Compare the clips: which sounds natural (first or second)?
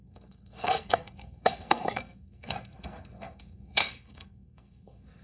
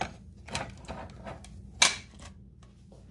second